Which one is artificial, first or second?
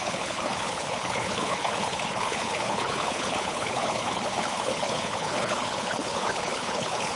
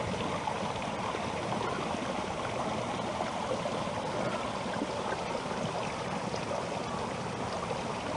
first